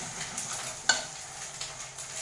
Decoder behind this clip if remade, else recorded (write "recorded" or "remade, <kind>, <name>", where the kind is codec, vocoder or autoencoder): recorded